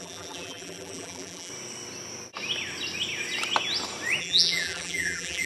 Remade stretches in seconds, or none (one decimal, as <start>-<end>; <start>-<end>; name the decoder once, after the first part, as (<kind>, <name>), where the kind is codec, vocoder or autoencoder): 0.0-1.5 (vocoder, BigVGAN v2); 4.2-5.5

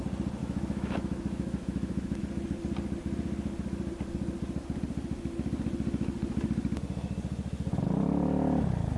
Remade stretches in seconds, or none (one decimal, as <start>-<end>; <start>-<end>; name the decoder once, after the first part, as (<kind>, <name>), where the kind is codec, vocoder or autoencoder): 0.4-2.2 (autoencoder, DAC-VAE)